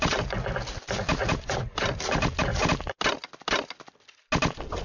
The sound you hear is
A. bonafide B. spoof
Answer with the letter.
A